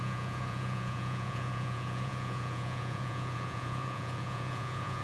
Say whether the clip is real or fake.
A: fake